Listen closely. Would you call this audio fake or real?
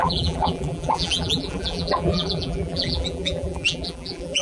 fake